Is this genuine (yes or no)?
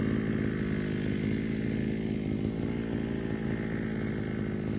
yes